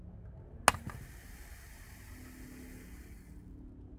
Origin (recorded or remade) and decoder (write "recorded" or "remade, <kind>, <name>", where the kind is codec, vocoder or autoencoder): recorded